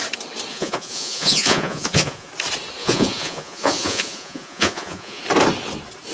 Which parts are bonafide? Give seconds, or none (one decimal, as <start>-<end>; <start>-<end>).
0.0-0.5; 2.3-2.8; 5.2-6.1